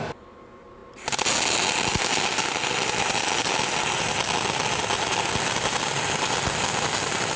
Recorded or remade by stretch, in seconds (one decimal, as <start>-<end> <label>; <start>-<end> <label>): 0.0-7.4 recorded